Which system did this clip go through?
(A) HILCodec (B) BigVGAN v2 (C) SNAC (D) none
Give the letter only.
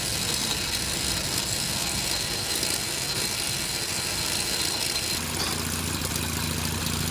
D